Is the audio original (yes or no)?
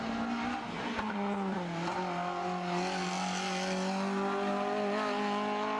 yes